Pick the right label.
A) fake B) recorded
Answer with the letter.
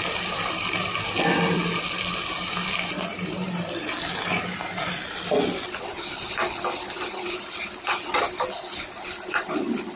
B